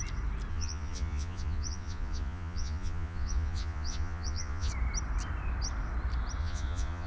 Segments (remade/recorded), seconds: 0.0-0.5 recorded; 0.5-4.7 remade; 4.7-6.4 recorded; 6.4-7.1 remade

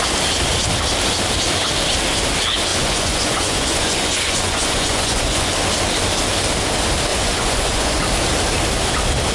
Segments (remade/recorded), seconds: 0.0-2.7 recorded; 2.7-5.5 remade; 5.5-7.1 recorded; 7.1-8.0 remade; 8.0-9.3 recorded

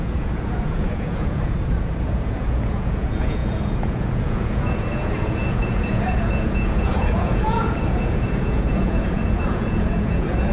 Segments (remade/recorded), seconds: 0.0-10.5 remade

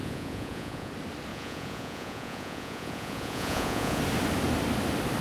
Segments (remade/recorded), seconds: 0.0-0.9 remade; 0.9-1.3 recorded; 1.3-4.0 remade; 4.0-5.2 recorded